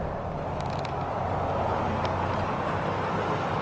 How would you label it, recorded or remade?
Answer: recorded